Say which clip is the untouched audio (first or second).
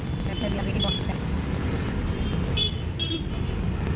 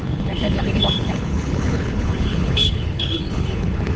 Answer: first